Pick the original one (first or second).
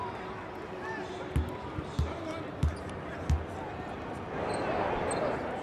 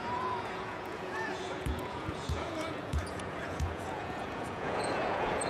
first